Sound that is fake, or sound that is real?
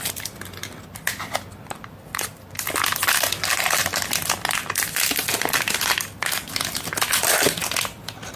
real